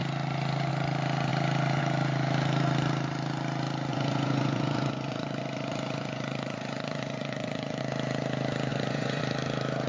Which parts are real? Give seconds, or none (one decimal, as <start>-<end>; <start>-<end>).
0.0-3.9; 7.8-8.7; 9.2-9.9

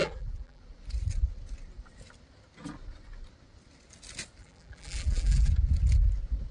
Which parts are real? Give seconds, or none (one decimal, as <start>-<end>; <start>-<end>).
0.6-4.4; 5.5-6.5